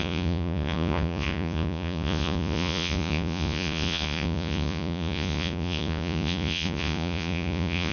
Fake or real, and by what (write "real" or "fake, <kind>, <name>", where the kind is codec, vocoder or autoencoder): fake, vocoder, Vocos